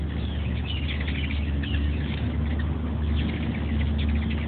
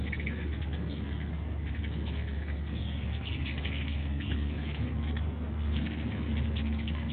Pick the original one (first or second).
first